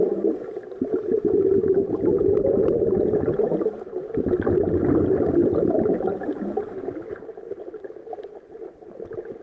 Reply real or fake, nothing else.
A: real